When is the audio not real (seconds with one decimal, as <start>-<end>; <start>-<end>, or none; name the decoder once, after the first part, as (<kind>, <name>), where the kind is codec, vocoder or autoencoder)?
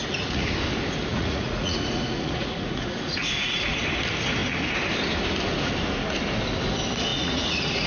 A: 0.0-0.5 (vocoder, Vocos); 1.1-3.8; 7.1-7.9